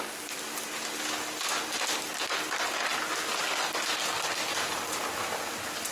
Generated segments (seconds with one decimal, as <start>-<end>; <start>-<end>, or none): none